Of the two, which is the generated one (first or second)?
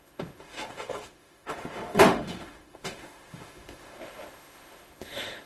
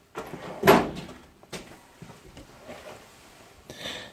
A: first